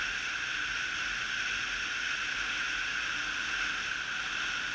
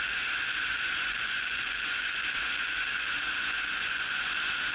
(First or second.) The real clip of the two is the first